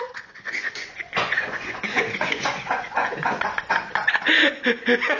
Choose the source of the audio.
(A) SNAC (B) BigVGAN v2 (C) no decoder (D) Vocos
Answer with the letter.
D